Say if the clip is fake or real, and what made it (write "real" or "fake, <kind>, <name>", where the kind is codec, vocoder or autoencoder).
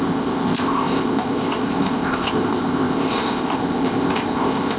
fake, codec, ZipCodec